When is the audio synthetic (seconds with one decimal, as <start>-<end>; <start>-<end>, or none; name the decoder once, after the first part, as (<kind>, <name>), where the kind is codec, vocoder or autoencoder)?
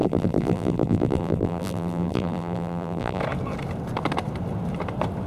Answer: 0.0-3.2 (vocoder, BigVGAN v2)